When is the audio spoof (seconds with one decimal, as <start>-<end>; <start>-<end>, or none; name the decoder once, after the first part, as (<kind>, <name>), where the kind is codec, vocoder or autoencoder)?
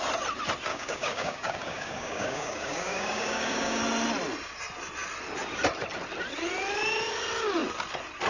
0.7-3.8 (codec, DAC)